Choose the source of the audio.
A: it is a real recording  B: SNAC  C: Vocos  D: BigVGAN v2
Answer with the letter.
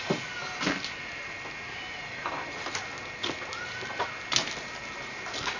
A